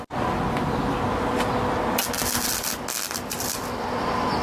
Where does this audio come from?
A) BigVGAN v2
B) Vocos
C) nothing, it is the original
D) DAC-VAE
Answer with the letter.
C